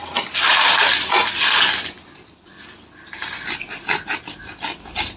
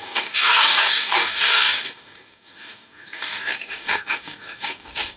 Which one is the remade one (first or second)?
second